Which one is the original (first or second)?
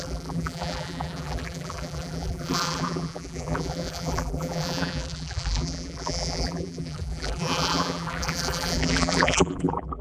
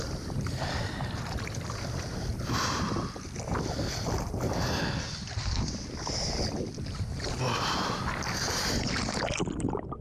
second